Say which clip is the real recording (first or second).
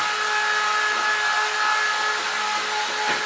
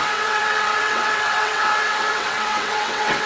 first